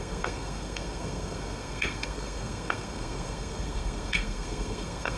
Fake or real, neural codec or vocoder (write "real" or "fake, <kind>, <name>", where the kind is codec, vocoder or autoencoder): fake, codec, SNAC